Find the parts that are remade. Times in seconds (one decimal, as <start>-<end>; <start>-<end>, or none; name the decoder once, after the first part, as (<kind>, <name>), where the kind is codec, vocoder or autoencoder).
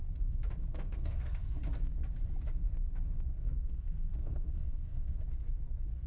0.7-1.6 (codec, SNAC); 3.4-5.2